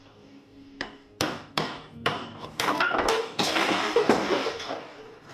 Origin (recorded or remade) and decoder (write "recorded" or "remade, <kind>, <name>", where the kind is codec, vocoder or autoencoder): remade, codec, DAC